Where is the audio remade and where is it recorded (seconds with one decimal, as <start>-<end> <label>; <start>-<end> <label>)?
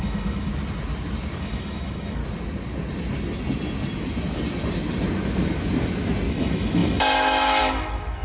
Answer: 0.0-0.5 remade; 0.5-1.4 recorded; 1.4-2.2 remade; 2.2-6.3 recorded; 6.3-8.2 remade